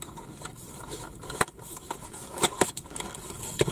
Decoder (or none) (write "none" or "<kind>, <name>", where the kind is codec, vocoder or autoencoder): codec, DAC